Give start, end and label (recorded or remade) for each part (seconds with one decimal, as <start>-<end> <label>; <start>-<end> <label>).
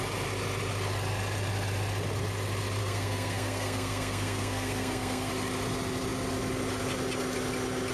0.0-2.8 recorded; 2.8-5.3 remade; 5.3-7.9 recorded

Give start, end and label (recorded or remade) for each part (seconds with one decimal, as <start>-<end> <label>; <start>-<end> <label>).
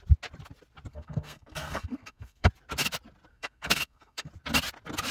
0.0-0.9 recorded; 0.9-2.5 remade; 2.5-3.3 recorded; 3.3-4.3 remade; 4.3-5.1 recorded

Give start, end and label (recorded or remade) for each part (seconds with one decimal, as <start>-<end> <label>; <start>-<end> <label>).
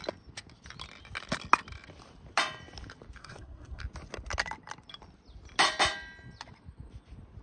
0.0-3.2 recorded; 3.2-3.8 remade; 3.8-7.4 recorded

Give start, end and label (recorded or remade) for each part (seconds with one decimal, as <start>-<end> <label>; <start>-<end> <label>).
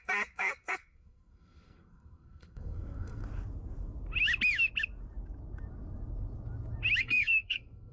0.0-3.2 remade; 3.2-7.0 recorded; 7.0-7.9 remade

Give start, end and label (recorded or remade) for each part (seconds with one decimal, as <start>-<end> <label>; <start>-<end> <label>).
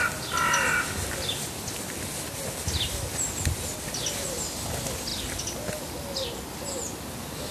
0.0-7.5 recorded